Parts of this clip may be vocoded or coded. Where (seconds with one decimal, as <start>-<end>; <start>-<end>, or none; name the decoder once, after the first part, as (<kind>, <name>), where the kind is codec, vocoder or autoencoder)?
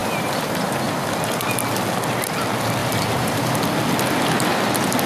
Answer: 0.0-0.9 (vocoder, BigVGAN v2); 2.8-3.5